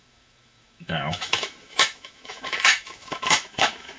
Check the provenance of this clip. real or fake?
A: fake